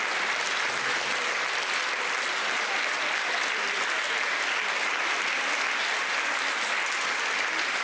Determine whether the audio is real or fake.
fake